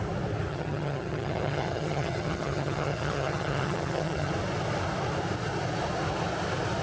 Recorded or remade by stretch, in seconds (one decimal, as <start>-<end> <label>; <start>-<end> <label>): 0.0-0.5 recorded; 0.5-4.3 remade; 4.3-6.8 recorded